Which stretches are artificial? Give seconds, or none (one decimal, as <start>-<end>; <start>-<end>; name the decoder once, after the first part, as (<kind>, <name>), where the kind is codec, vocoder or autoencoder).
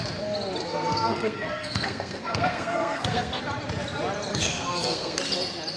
0.6-3.4 (codec, SNAC); 4.3-5.2